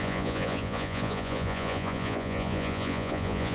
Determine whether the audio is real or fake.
fake